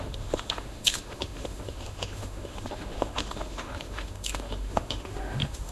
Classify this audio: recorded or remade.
remade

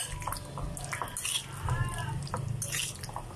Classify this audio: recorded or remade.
recorded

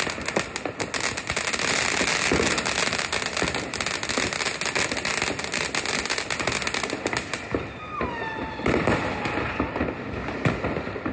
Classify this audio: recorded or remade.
recorded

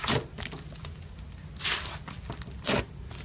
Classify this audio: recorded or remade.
recorded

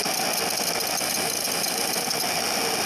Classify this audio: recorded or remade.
recorded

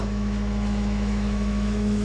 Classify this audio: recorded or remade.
remade